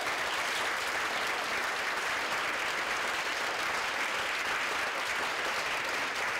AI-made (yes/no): no